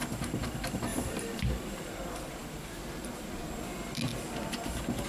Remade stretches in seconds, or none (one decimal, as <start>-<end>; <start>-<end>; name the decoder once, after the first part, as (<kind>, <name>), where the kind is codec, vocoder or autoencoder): 0.9-1.9 (vocoder, BigVGAN v2); 2.4-3.5